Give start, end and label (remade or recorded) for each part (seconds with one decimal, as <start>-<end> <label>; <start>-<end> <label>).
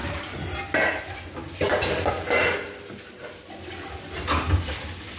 0.0-5.2 recorded